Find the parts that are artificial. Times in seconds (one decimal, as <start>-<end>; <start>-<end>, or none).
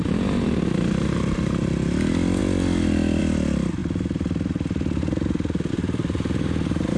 none